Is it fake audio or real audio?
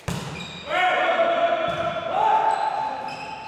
real